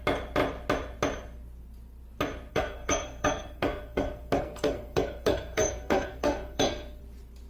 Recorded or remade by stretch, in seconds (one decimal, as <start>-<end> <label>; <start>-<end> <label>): 0.0-2.5 recorded; 2.5-7.0 remade; 7.0-7.5 recorded